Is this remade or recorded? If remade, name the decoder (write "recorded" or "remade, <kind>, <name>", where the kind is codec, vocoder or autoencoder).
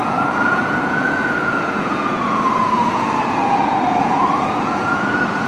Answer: remade, vocoder, Vocos